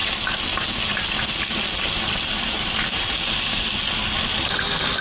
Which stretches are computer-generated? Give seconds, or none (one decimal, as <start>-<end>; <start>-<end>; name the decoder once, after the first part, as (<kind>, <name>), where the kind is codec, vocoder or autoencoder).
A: none